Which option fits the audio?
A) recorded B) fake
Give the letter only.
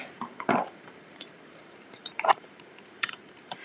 B